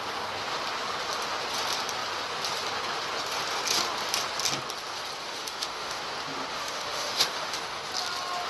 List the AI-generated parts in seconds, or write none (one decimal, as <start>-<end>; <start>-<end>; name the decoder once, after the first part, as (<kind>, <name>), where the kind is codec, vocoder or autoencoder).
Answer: 5.2-6.0 (autoencoder, DAC-VAE); 6.5-7.8

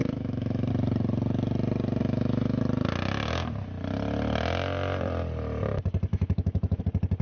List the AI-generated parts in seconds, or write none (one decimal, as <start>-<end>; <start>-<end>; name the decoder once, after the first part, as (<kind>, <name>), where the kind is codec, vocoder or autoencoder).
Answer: 0.0-0.7 (autoencoder, DAC-VAE); 2.0-2.6; 6.1-6.8

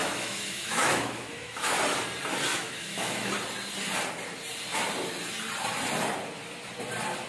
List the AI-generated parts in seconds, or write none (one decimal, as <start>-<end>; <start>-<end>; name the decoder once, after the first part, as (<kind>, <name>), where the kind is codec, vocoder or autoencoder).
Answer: 0.0-1.8 (autoencoder, DAC-VAE); 2.5-3.3